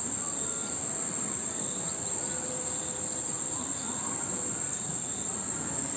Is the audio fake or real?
real